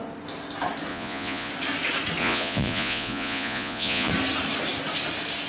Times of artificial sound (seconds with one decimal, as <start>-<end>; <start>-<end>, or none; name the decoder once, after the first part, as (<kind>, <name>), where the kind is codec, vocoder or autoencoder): 0.9-1.5 (vocoder, Vocos); 2.2-4.1